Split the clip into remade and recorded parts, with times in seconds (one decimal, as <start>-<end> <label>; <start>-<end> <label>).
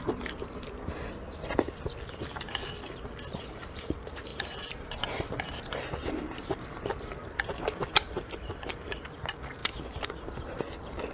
0.0-0.9 remade; 0.9-3.6 recorded; 3.6-7.2 remade; 7.2-7.9 recorded; 7.9-11.1 remade